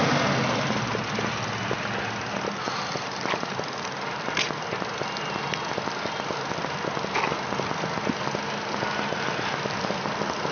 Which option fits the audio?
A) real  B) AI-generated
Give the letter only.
A